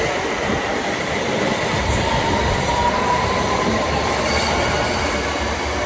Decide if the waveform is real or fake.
fake